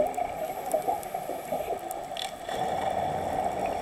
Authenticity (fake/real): real